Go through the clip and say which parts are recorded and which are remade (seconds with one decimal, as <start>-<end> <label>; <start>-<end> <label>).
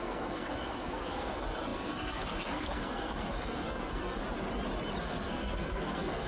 0.0-4.2 remade; 4.2-5.0 recorded; 5.0-6.3 remade